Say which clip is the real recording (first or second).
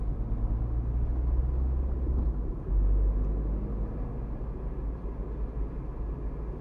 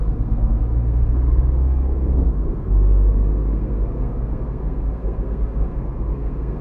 first